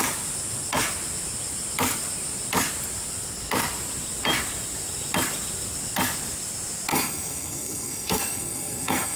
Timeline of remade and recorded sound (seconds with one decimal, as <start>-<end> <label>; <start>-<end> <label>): 0.0-6.9 recorded; 6.9-9.2 remade